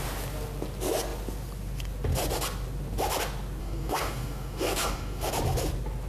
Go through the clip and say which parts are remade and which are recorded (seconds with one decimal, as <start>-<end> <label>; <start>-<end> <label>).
0.0-3.6 recorded; 3.6-5.3 remade; 5.3-6.1 recorded